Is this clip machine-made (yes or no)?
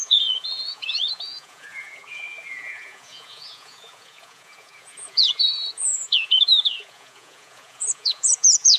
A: yes